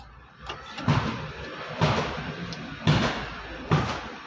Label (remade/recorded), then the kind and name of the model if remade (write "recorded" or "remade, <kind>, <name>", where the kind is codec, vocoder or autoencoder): recorded